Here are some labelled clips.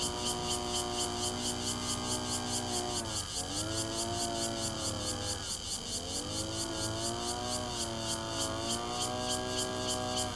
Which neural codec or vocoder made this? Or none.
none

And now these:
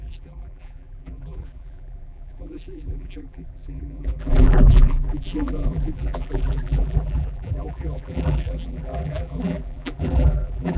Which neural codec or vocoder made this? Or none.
vocoder, BigVGAN v2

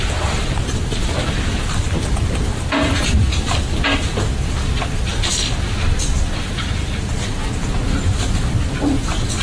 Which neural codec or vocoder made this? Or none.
vocoder, BigVGAN v2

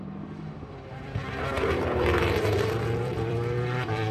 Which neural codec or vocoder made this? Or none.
vocoder, BigVGAN v2